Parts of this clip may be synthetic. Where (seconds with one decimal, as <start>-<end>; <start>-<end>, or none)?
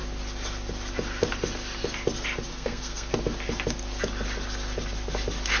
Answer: 2.5-3.1